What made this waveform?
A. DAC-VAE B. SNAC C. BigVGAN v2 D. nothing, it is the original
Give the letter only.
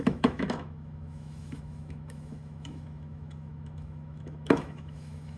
A